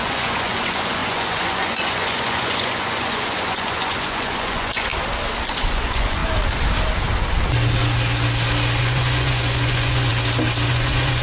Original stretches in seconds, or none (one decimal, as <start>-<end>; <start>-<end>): 4.9-5.7; 6.2-8.8; 10.1-10.7